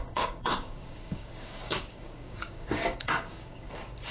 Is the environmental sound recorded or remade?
remade